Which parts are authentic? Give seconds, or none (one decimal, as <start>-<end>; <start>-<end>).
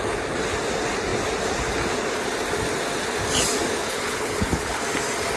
0.0-3.8; 4.8-5.4